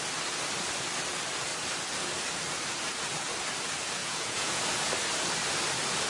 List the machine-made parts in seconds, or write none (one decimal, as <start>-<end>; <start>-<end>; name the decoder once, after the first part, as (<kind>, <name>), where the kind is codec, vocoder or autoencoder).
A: 4.0-4.6 (vocoder, Vocos)